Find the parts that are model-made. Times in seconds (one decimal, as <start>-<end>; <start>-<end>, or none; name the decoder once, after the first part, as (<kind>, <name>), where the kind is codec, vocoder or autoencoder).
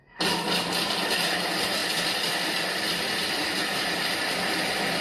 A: 1.8-4.6 (vocoder, BigVGAN v2)